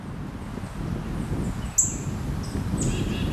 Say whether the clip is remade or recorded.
recorded